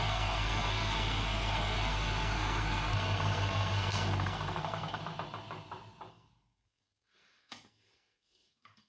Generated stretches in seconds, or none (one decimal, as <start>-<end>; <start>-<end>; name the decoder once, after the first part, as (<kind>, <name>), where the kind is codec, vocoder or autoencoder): 0.0-5.0 (codec, SNAC); 6.1-8.9